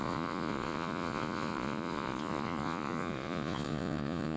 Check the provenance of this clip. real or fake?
fake